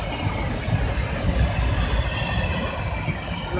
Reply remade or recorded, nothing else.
recorded